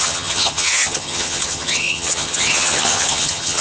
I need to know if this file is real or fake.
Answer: fake